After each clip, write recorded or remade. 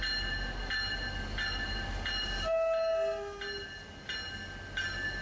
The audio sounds recorded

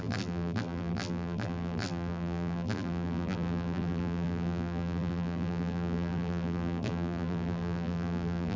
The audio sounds remade